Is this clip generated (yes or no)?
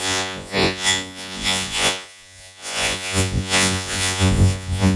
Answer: yes